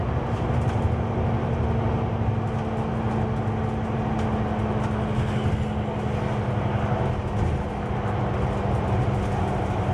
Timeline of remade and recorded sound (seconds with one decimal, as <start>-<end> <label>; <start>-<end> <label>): 0.0-9.9 recorded